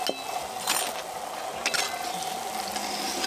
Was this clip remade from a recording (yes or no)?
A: no